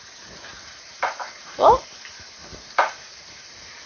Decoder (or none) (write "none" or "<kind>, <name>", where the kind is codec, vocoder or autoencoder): vocoder, BigVGAN v2